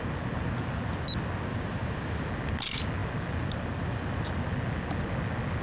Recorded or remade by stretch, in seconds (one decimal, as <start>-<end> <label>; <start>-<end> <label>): 0.0-1.5 recorded; 1.5-2.3 remade; 2.3-5.6 recorded